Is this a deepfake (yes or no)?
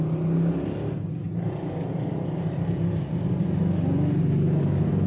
no